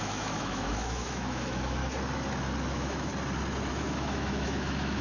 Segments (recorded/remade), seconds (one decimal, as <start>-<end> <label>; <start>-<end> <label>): 0.0-1.8 remade; 1.8-2.7 recorded; 2.7-3.1 remade; 3.1-3.7 recorded; 3.7-5.0 remade